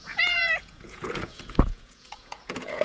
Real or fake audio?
fake